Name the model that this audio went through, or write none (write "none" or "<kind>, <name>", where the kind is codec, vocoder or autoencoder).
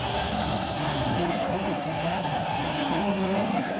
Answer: codec, SNAC